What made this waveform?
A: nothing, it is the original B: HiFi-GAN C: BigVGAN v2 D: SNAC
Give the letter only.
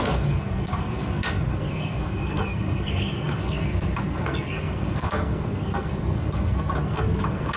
D